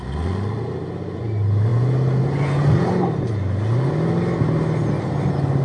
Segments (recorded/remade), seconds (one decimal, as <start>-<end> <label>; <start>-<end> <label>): 0.0-5.6 recorded

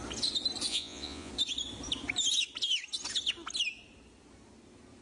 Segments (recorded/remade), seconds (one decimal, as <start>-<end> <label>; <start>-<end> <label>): 0.0-0.7 recorded; 0.7-1.3 remade; 1.3-5.0 recorded

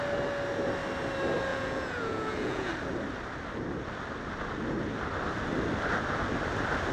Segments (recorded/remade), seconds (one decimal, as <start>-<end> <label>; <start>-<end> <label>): 0.0-1.5 recorded; 1.5-2.7 remade; 2.7-6.9 recorded

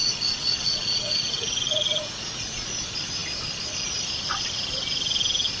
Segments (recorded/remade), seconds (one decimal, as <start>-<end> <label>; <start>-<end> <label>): 0.0-2.7 remade; 2.7-5.6 recorded

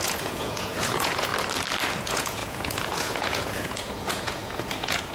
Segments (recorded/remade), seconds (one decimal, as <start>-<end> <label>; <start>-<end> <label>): 0.0-1.3 remade; 1.3-2.0 recorded; 2.0-5.1 remade

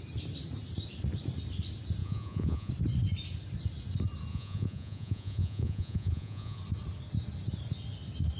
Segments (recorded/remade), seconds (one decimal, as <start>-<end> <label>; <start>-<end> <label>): 0.0-2.0 recorded; 2.0-2.7 remade; 2.7-4.3 recorded; 4.3-6.6 remade; 6.6-8.4 recorded

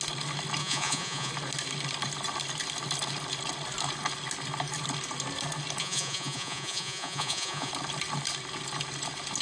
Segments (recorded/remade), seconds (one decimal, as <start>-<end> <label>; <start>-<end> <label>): 0.0-0.6 recorded; 0.6-1.3 remade; 1.3-5.8 recorded; 5.8-7.7 remade; 7.7-9.4 recorded